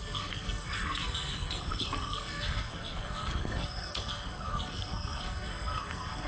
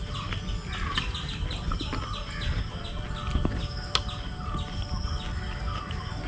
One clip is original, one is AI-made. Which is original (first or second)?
second